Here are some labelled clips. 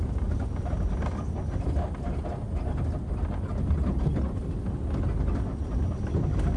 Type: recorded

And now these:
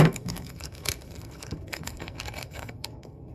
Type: remade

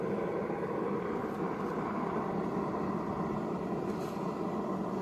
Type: recorded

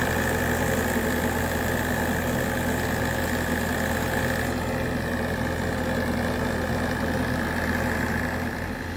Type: recorded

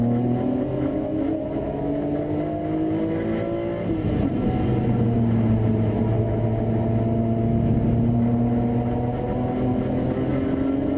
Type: recorded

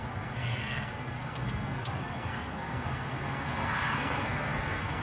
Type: remade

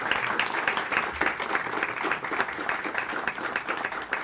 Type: recorded